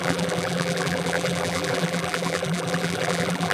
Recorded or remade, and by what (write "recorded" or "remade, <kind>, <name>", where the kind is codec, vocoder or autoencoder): remade, vocoder, BigVGAN v2